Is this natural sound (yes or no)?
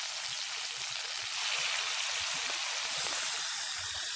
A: yes